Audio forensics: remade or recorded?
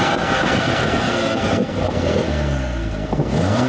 remade